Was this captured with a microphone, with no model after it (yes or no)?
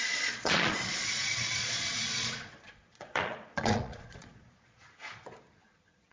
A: no